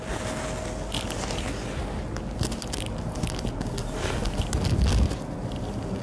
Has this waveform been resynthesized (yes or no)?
no